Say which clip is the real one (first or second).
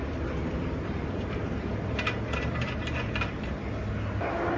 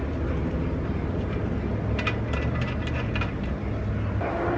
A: second